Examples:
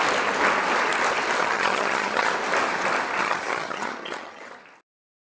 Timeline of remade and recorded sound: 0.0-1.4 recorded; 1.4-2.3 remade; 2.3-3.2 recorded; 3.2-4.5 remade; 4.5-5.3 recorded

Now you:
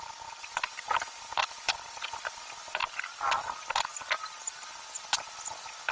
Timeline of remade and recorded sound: 0.0-5.9 recorded

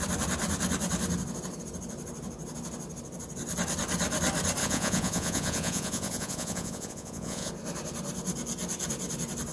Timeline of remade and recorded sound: 0.0-4.6 recorded; 4.6-7.5 remade; 7.5-9.5 recorded

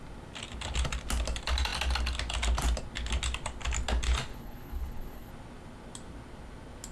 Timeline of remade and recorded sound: 0.0-4.3 recorded; 4.3-5.3 remade; 5.3-6.9 recorded

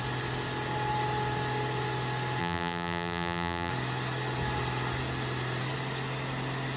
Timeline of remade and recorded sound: 0.0-2.4 recorded; 2.4-3.7 remade; 3.7-6.8 recorded

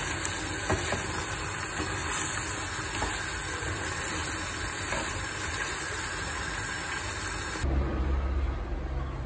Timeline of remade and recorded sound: 0.0-9.3 recorded

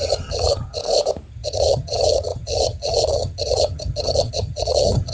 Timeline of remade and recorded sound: 0.0-0.8 remade; 0.8-1.3 recorded; 1.3-5.1 remade

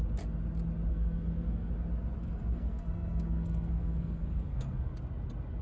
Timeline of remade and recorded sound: 0.0-0.9 recorded; 0.9-1.7 remade; 1.7-2.2 recorded; 2.2-5.0 remade; 5.0-5.6 recorded